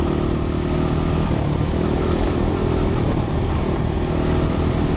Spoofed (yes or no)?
no